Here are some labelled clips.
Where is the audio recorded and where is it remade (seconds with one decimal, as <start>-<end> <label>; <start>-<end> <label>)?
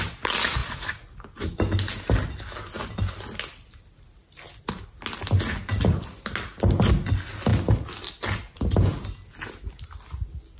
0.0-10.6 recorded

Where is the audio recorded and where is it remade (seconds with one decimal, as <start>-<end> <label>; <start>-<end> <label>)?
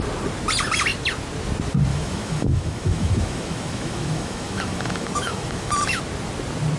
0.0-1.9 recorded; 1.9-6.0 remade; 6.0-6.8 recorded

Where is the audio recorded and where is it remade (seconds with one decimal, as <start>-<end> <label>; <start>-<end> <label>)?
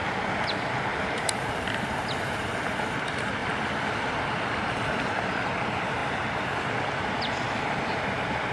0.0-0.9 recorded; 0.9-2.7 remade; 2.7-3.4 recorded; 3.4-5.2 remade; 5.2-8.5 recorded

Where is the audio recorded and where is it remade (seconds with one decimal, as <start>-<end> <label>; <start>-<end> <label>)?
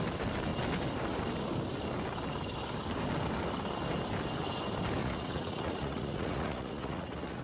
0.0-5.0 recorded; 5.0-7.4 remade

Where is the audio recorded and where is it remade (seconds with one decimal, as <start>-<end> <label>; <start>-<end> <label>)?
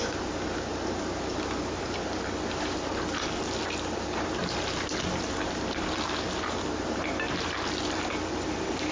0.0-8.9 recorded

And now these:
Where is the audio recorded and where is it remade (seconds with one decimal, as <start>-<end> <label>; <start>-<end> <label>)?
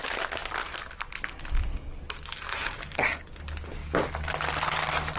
0.0-5.2 recorded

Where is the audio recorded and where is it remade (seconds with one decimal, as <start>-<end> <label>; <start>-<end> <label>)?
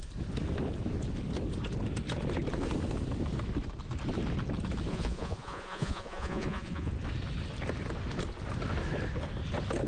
0.0-4.9 recorded; 4.9-6.9 remade; 6.9-9.9 recorded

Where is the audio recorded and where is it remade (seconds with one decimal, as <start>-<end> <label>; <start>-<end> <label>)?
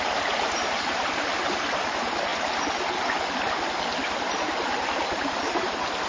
0.0-2.3 remade; 2.3-4.7 recorded; 4.7-6.1 remade